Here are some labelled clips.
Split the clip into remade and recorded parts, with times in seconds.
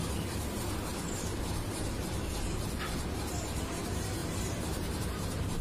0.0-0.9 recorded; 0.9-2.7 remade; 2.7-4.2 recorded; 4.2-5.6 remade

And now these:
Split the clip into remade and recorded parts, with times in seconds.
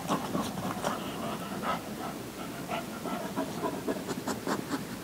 0.0-1.7 recorded; 1.7-5.0 remade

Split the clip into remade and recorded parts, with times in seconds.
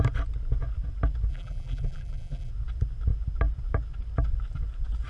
0.0-1.3 recorded; 1.3-2.5 remade; 2.5-5.1 recorded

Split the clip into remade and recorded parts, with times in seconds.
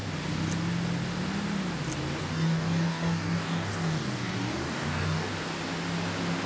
0.0-2.2 recorded; 2.2-5.3 remade; 5.3-6.5 recorded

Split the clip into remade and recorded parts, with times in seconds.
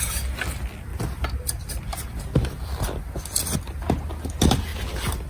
0.0-0.9 recorded; 0.9-3.1 remade; 3.1-4.7 recorded; 4.7-5.3 remade